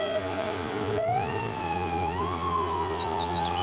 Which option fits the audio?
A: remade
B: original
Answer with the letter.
A